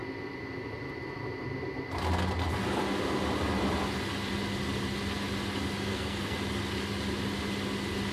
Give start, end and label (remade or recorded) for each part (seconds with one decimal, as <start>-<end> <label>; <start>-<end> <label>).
0.0-5.9 recorded; 5.9-6.4 remade; 6.4-8.1 recorded